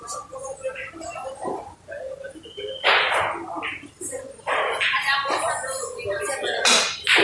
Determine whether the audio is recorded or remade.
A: recorded